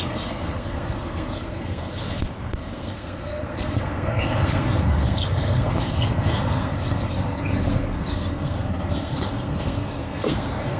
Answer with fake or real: fake